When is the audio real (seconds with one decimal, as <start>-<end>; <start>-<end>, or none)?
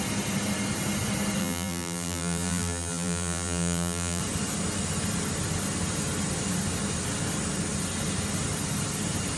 0.0-1.4; 4.2-9.4